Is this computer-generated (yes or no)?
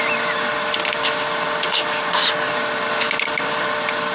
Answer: no